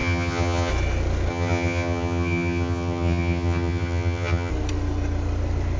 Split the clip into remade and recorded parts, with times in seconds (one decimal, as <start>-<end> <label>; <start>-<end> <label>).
0.0-0.7 remade; 0.7-1.3 recorded; 1.3-4.5 remade; 4.5-5.8 recorded